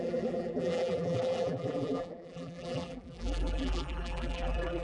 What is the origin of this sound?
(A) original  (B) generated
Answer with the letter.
B